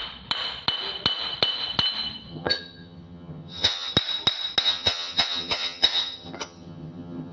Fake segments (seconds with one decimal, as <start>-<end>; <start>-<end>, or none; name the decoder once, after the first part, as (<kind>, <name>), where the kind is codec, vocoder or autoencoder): 2.3-3.9 (vocoder, HiFi-GAN); 4.6-7.3